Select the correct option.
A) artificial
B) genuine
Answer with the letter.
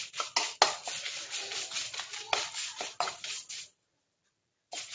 B